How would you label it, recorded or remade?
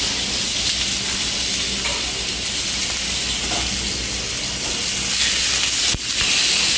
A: recorded